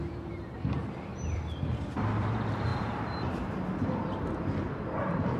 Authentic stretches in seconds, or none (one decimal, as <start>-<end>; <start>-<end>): 1.1-2.1